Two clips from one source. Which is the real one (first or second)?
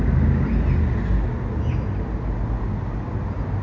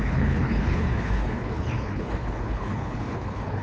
first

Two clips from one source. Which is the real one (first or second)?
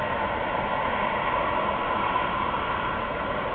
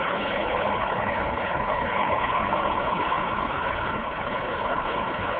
first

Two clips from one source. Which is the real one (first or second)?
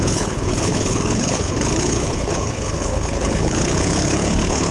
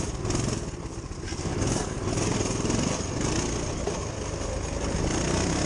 second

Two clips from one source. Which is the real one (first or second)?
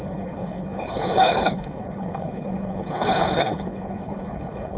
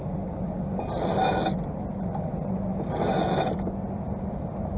second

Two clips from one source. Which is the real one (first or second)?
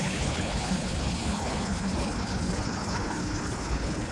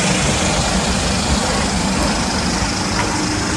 second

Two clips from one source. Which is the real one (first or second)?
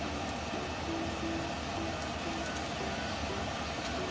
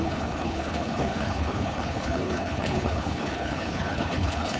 first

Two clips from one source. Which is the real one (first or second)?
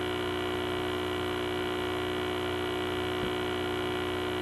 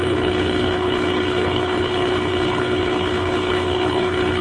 first